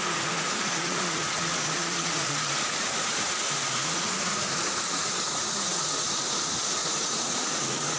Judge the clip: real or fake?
fake